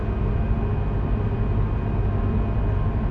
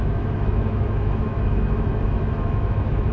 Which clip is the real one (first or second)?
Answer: first